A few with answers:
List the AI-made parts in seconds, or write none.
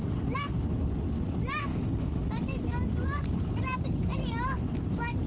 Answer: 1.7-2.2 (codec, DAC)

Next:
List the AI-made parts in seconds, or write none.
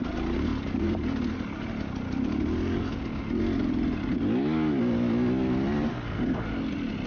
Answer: none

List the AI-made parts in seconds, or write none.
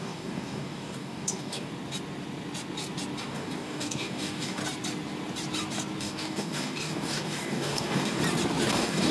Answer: 0.0-1.7 (codec, DAC); 3.2-4.6; 6.0-8.2; 8.7-9.1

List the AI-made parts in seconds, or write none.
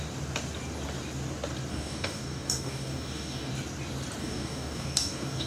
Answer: 1.7-3.5 (codec, DAC); 4.2-5.5